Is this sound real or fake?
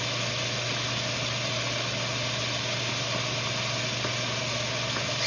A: real